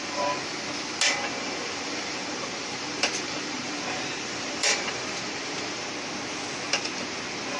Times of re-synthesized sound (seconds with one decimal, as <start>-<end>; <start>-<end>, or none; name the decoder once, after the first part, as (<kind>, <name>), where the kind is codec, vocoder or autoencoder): 1.3-5.9 (vocoder, BigVGAN v2)